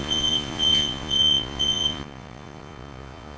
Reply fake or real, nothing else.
fake